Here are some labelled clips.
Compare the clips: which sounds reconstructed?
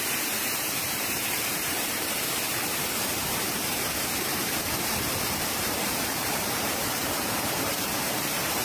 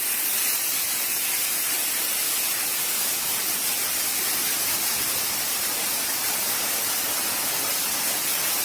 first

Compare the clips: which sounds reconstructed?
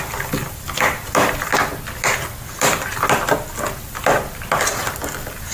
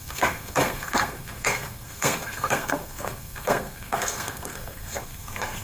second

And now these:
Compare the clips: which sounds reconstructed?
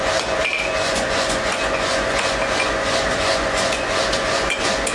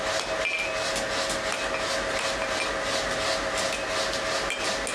first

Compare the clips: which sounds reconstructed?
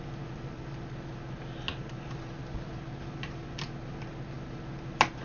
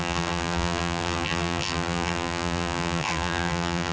second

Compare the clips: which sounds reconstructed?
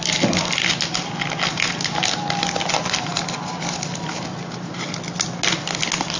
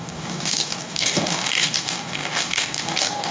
second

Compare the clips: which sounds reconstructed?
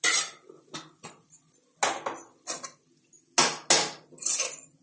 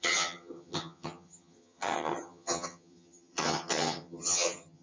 second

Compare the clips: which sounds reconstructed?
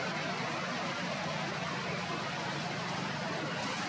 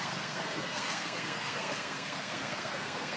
second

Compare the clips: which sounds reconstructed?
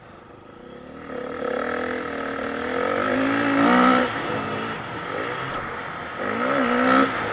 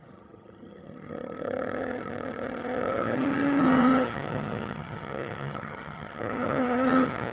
second